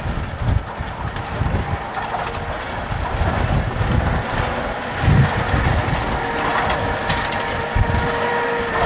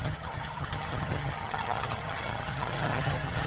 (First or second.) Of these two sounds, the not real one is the second